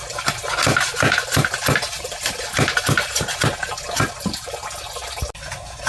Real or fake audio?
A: real